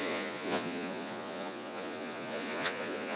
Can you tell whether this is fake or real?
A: fake